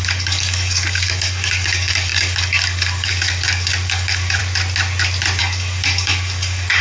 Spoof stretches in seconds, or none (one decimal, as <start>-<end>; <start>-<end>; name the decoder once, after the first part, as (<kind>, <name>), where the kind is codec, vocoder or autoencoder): 0.0-4.4 (codec, DAC); 5.4-6.8